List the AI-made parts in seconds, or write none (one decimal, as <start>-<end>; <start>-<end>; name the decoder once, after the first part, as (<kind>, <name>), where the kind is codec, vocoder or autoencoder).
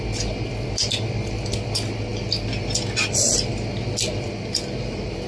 none